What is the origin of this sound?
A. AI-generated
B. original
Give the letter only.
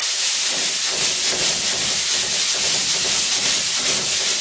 B